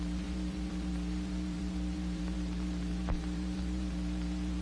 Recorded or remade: remade